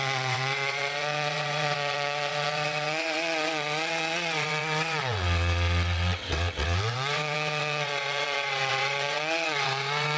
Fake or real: fake